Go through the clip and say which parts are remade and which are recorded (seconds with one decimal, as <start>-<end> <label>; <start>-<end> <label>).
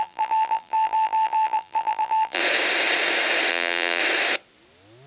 0.0-2.4 remade; 2.4-3.5 recorded; 3.5-4.0 remade; 4.0-5.1 recorded